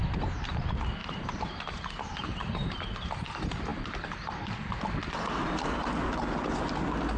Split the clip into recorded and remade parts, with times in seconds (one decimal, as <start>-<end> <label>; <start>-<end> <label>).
0.0-1.0 recorded; 1.0-3.1 remade; 3.1-7.2 recorded